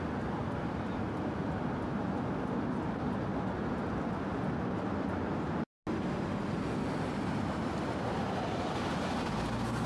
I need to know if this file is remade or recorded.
recorded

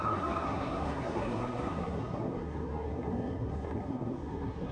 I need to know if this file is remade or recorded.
remade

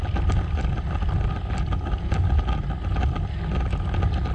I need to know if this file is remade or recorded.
recorded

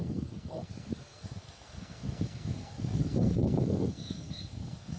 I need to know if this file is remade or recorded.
remade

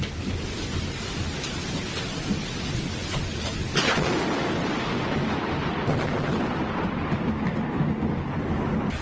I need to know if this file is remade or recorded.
recorded